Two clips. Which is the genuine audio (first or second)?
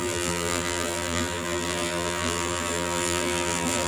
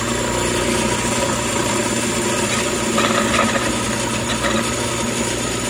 second